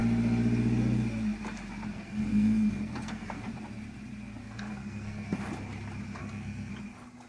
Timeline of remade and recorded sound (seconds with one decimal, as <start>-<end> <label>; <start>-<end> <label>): 0.0-1.9 recorded; 1.9-3.5 remade; 3.5-4.4 recorded; 4.4-5.4 remade; 5.4-6.2 recorded; 6.2-6.7 remade; 6.7-7.3 recorded